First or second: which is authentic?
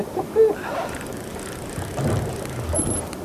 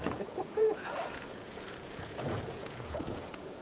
first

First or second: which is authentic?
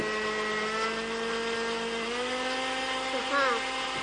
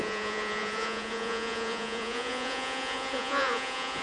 first